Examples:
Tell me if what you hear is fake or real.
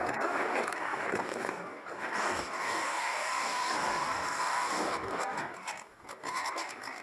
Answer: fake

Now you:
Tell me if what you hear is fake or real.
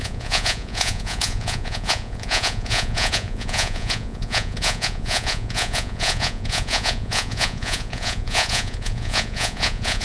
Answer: fake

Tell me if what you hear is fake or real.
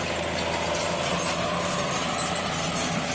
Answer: real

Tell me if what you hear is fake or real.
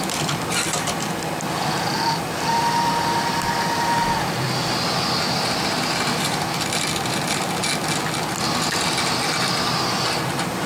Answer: real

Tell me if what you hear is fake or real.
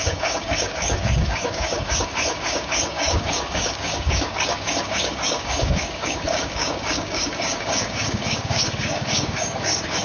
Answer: fake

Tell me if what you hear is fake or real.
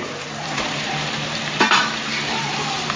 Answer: fake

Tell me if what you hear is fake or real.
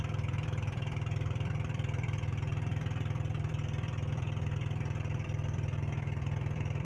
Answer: fake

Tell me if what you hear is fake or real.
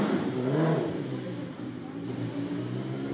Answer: real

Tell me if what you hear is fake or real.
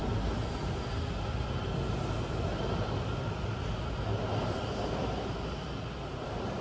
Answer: real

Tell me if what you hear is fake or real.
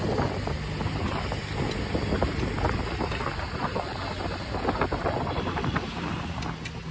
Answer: real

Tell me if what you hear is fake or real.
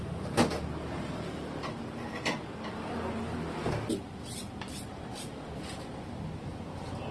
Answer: real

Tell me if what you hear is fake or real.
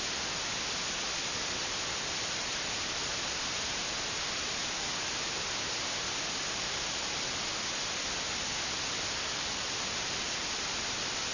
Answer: real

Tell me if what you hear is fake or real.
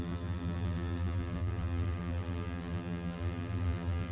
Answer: fake